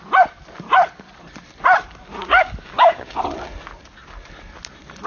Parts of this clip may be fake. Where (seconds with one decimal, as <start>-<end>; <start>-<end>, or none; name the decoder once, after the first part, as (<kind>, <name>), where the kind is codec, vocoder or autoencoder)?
2.4-3.2 (codec, DAC)